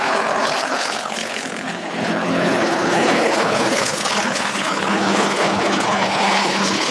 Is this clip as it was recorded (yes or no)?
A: no